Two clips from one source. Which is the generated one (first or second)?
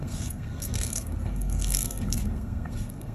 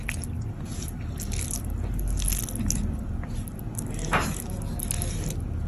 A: first